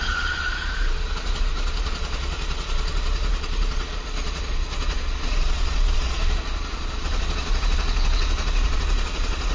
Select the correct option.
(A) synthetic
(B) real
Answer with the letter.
A